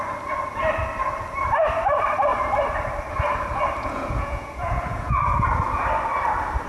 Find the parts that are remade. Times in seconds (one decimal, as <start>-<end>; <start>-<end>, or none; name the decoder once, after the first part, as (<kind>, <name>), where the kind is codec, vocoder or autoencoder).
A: 3.8-5.5 (vocoder, Vocos)